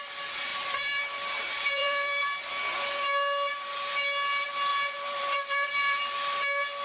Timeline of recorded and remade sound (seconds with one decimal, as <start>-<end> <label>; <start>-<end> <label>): 0.0-0.5 recorded; 0.5-3.0 remade; 3.0-4.7 recorded; 4.7-6.0 remade; 6.0-6.8 recorded